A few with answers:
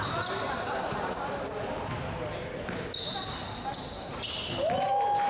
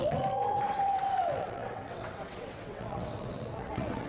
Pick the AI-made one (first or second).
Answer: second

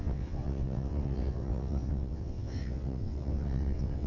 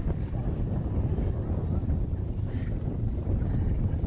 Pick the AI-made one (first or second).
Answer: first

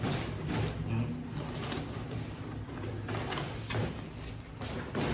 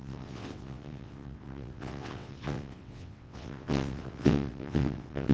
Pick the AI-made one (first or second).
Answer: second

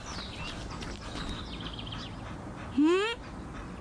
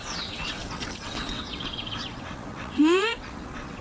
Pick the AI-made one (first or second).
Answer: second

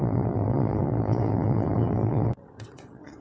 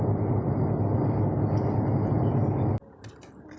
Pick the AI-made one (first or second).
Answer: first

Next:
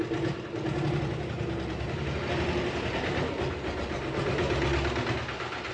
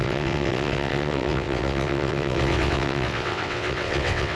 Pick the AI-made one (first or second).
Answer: second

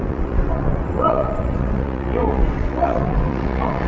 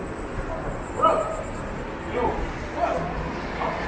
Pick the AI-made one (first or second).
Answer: first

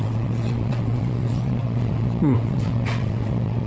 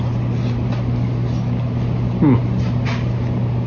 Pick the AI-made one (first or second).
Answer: first